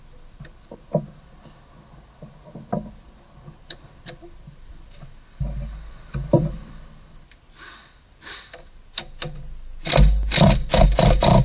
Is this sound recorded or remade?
recorded